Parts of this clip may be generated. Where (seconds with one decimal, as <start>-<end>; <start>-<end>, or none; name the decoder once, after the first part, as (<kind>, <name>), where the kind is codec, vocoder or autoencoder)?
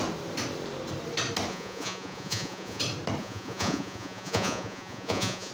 1.5-2.8 (vocoder, Vocos); 3.2-5.5